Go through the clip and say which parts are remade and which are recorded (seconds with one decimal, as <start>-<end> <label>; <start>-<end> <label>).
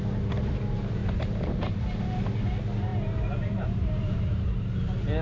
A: 0.0-1.0 recorded; 1.0-1.7 remade; 1.7-2.9 recorded; 2.9-4.4 remade; 4.4-5.2 recorded